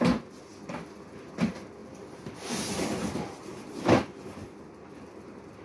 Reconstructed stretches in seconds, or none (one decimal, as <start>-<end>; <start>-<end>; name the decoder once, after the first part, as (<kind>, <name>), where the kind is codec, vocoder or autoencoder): 1.8-3.8 (vocoder, BigVGAN v2)